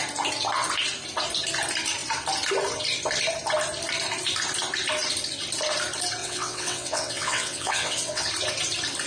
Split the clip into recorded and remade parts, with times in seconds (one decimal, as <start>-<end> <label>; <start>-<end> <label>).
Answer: 0.0-6.2 recorded; 6.2-8.3 remade; 8.3-9.1 recorded